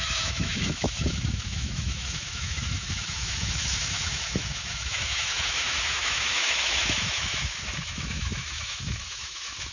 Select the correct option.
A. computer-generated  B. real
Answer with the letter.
A